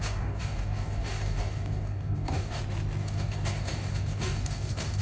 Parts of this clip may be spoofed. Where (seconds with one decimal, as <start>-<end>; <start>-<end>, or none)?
0.0-2.6; 3.0-5.0